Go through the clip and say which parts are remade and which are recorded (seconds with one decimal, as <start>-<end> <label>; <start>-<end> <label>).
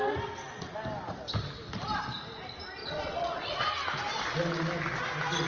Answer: 0.0-2.8 recorded; 2.8-3.7 remade; 3.7-5.5 recorded